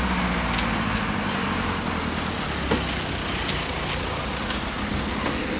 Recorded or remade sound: recorded